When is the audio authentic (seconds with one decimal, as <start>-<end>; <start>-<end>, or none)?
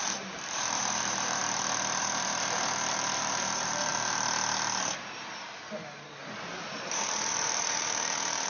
1.4-2.0; 3.9-6.7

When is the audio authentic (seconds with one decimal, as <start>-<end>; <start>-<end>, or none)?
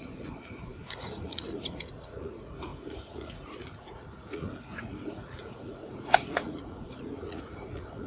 none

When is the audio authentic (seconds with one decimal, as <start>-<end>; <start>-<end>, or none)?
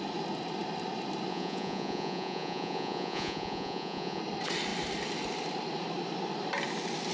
0.0-1.3; 4.2-7.1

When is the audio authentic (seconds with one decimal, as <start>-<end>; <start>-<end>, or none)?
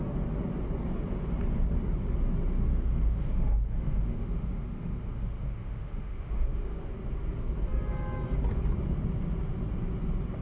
0.0-2.7; 6.9-10.4